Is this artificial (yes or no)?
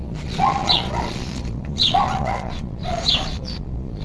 yes